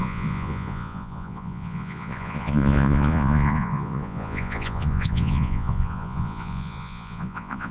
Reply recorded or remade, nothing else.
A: remade